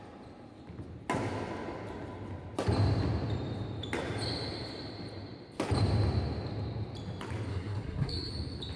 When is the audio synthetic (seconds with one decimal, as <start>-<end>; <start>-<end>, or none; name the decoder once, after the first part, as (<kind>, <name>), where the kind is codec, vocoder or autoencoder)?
7.5-8.3 (codec, SNAC)